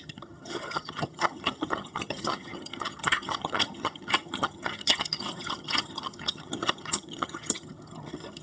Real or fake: fake